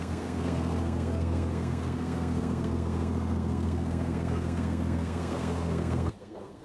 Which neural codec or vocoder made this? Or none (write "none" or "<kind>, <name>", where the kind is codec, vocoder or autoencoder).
codec, SNAC